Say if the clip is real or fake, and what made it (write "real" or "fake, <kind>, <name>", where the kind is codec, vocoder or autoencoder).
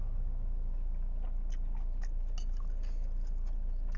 real